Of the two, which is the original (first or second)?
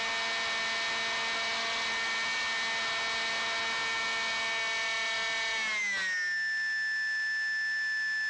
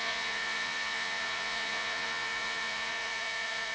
first